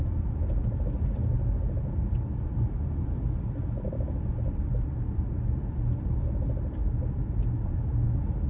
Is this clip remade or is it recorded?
recorded